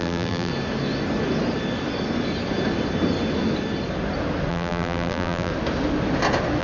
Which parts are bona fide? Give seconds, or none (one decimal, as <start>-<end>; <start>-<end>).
0.5-4.5; 5.5-6.6